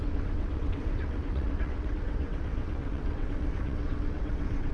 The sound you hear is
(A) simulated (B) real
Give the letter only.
A